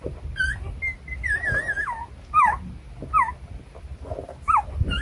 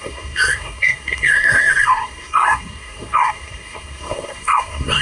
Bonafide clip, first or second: first